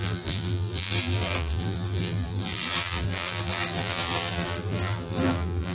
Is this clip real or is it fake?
fake